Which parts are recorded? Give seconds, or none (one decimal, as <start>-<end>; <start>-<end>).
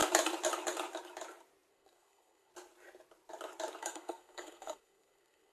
0.0-1.7; 2.5-3.8